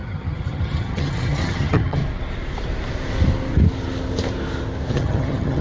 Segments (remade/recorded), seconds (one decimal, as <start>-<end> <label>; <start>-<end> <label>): 0.0-2.0 remade; 2.0-4.9 recorded; 4.9-5.6 remade